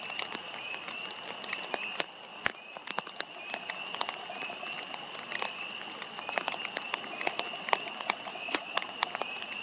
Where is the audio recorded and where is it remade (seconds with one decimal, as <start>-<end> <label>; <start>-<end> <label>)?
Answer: 0.0-8.3 recorded; 8.3-8.9 remade; 8.9-9.6 recorded